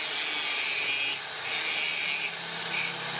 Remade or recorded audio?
recorded